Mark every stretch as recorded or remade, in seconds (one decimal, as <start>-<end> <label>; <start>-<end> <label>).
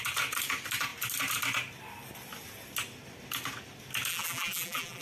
0.0-4.1 recorded; 4.1-5.0 remade